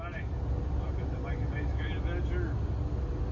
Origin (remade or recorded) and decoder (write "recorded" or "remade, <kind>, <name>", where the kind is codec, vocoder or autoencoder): recorded